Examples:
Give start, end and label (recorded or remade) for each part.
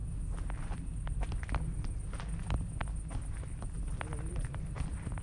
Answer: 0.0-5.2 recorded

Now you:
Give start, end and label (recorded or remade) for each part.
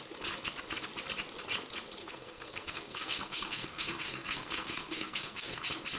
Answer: 0.0-2.0 recorded; 2.0-5.6 remade; 5.6-6.0 recorded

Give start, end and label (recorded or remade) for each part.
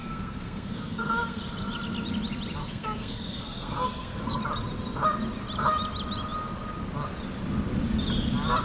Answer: 0.0-1.4 remade; 1.4-2.6 recorded; 2.6-4.4 remade; 4.4-8.6 recorded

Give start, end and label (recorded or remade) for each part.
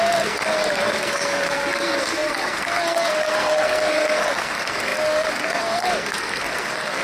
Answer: 0.0-7.0 remade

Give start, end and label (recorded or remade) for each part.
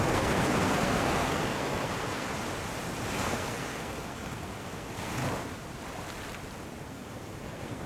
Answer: 0.0-2.3 remade; 2.3-3.1 recorded; 3.1-5.2 remade; 5.2-6.8 recorded; 6.8-7.9 remade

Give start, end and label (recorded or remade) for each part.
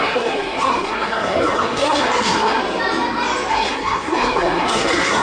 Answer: 0.0-2.6 remade; 2.6-3.5 recorded; 3.5-5.2 remade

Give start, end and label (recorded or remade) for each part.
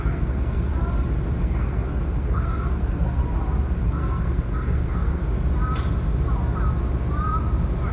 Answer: 0.0-0.7 remade; 0.7-1.4 recorded; 1.4-3.2 remade; 3.2-3.8 recorded; 3.8-5.2 remade; 5.2-7.9 recorded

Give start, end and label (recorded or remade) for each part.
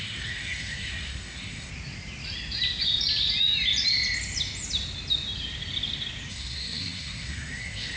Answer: 0.0-1.7 remade; 1.7-6.3 recorded; 6.3-8.0 remade